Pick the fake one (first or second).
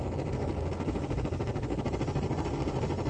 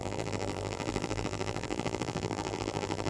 second